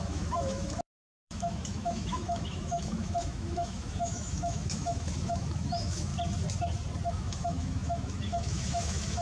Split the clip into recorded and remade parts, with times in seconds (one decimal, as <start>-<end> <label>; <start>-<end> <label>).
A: 0.0-6.1 remade; 6.1-7.1 recorded; 7.1-9.2 remade